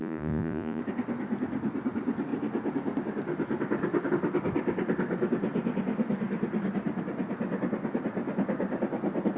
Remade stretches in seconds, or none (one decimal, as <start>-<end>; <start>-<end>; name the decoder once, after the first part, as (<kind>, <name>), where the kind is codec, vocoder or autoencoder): 0.0-0.8 (vocoder, Vocos)